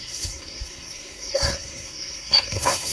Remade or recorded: remade